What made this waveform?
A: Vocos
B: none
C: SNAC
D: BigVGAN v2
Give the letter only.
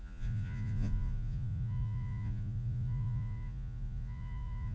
A